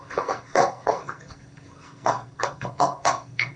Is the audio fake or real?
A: fake